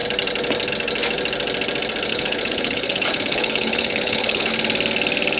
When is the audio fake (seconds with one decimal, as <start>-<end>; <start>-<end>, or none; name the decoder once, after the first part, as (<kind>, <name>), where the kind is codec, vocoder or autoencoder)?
2.1-4.5 (codec, HILCodec)